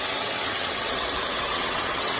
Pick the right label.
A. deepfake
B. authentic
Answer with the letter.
A